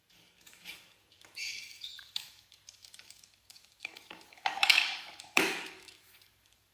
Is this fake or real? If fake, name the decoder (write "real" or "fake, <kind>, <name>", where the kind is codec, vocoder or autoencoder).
fake, codec, DAC